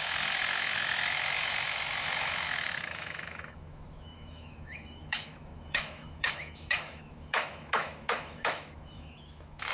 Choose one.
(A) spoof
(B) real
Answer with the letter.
A